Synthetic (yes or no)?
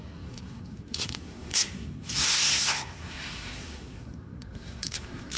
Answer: yes